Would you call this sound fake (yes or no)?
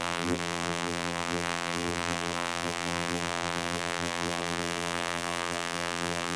yes